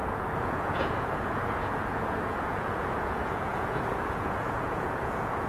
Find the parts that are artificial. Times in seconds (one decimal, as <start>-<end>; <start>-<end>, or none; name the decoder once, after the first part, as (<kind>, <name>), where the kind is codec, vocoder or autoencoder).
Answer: 0.0-5.5 (vocoder, Vocos)

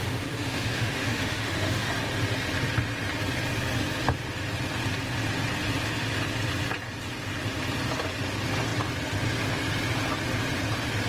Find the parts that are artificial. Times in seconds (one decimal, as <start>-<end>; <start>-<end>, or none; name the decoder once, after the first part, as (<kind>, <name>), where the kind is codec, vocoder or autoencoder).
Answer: 0.0-1.9 (autoencoder, DAC-VAE)

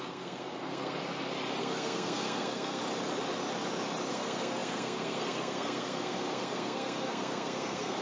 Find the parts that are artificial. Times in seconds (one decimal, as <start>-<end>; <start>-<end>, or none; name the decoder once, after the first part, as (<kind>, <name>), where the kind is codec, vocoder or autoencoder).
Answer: 0.0-1.0 (codec, SNAC); 1.6-2.8; 4.1-8.0

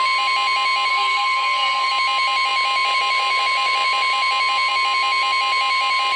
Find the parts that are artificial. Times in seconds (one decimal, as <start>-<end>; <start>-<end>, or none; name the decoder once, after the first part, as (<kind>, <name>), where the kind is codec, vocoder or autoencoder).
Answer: 0.9-1.9 (codec, SNAC)

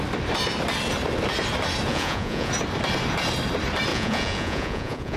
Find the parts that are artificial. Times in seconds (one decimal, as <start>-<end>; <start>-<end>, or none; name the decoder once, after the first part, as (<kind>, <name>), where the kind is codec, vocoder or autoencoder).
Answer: 1.9-2.5 (vocoder, Vocos); 3.9-5.2